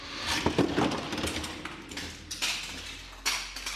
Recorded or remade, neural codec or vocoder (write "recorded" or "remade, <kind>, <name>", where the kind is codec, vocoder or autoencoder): recorded